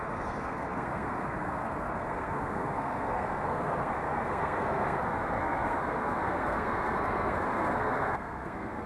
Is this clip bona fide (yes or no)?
no